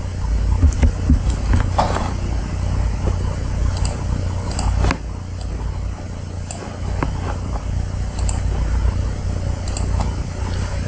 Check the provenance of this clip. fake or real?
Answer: real